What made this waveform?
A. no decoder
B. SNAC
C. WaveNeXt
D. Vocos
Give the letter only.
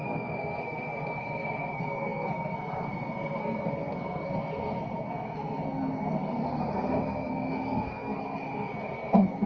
B